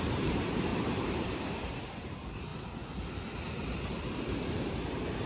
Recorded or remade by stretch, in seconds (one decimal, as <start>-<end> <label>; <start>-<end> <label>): 0.0-2.5 remade; 2.5-4.6 recorded; 4.6-5.3 remade